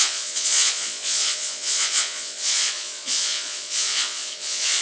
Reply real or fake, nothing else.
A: fake